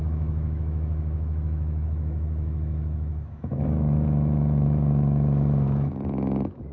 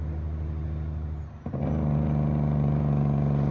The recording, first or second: second